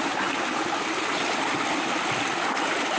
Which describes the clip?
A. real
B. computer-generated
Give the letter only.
A